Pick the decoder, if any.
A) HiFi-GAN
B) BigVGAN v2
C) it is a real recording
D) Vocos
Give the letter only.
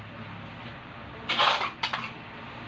C